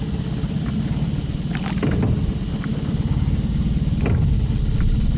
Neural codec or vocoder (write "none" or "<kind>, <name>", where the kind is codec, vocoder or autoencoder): none